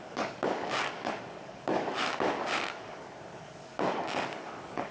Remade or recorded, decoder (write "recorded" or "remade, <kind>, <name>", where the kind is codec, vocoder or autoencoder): remade, codec, DAC